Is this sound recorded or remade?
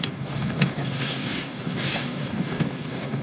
remade